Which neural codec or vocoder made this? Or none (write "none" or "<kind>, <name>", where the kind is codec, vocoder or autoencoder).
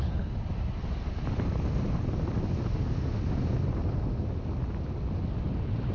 none